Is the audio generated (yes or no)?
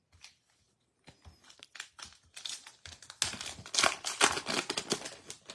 no